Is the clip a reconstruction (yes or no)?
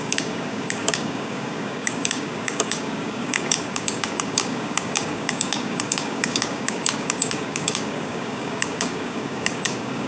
yes